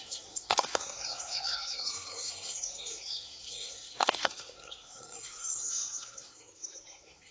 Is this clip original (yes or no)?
no